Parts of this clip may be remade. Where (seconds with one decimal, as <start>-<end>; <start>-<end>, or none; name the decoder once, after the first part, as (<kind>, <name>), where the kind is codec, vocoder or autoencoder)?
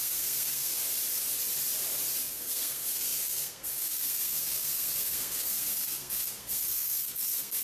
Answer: 0.0-0.8 (codec, SNAC); 2.2-7.6